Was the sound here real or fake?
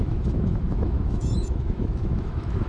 fake